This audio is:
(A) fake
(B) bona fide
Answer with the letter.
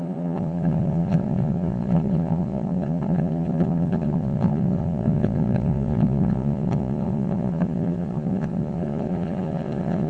A